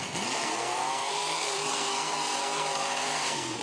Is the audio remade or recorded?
remade